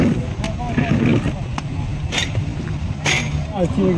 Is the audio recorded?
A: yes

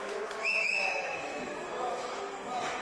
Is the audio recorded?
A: no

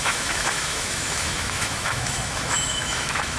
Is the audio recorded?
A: no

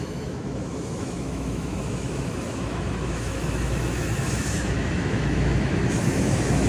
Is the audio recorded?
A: no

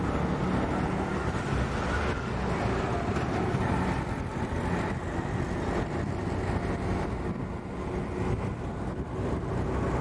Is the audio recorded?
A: yes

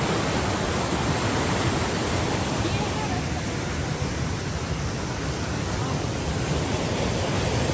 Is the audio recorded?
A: yes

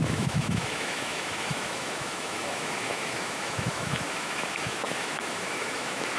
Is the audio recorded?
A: no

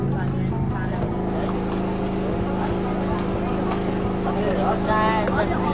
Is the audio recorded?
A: yes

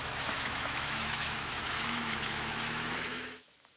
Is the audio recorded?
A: no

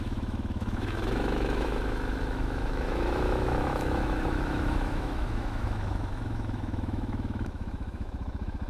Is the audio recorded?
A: no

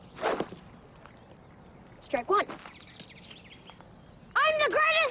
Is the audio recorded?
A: yes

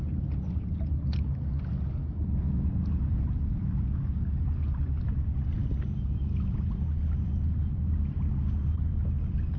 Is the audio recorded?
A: yes